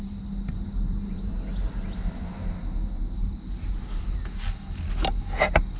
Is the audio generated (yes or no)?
no